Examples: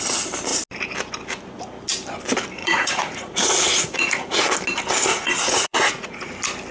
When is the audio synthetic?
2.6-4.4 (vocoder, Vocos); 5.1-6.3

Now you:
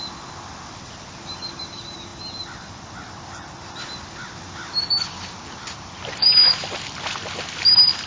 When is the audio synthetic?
none

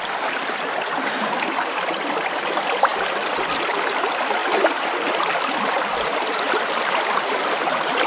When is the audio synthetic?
0.0-2.9 (vocoder, BigVGAN v2); 3.9-4.4; 5.6-8.1